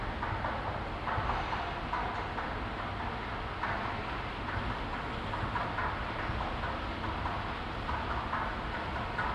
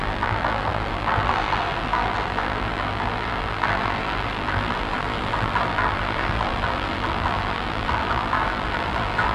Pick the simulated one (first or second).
second